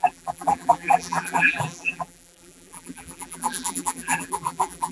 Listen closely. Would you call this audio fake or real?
fake